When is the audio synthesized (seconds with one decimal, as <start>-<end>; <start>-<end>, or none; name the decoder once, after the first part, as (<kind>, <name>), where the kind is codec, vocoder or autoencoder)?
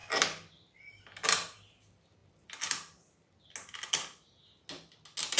0.0-1.0 (vocoder, BigVGAN v2); 2.2-3.4